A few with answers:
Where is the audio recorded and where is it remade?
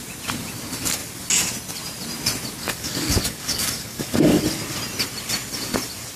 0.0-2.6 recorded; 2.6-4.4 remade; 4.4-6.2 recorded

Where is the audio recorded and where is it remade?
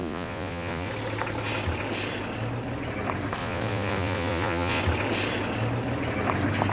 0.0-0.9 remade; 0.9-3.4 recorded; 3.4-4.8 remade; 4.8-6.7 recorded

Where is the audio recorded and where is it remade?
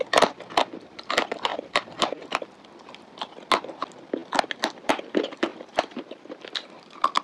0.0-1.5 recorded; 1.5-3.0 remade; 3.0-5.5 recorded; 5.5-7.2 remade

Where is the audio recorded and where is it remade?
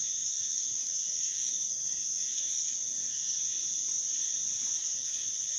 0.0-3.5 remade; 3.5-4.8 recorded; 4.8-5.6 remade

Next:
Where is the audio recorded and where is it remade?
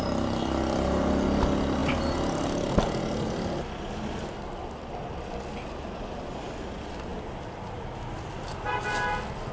0.0-9.5 recorded